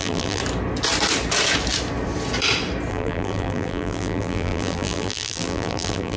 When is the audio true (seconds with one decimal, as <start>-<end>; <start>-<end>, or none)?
0.4-2.9